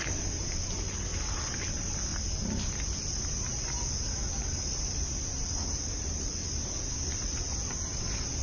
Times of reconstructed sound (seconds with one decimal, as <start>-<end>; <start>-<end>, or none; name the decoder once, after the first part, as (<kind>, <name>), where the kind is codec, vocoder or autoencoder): none